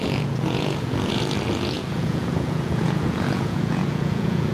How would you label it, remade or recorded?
remade